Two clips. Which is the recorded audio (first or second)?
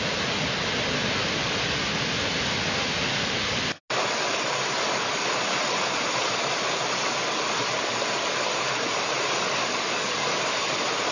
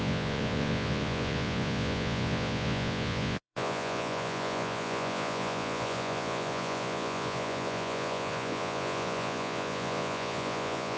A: first